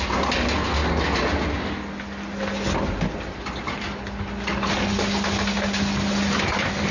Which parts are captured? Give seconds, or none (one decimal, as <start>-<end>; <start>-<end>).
0.0-6.9